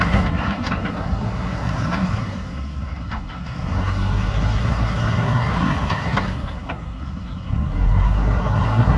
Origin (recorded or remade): remade